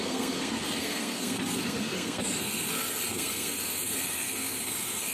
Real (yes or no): no